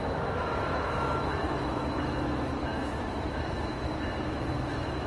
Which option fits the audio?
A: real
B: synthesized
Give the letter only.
B